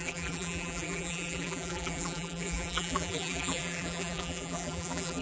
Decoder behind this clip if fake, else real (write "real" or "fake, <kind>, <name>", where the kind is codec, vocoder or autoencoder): fake, vocoder, BigVGAN v2